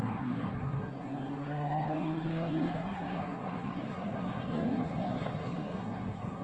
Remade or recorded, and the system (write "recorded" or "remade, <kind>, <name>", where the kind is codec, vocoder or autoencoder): remade, codec, SNAC